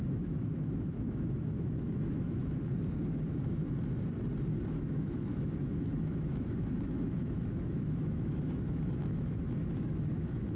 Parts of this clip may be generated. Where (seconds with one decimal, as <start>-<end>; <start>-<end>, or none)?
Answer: 0.0-2.7; 4.7-10.6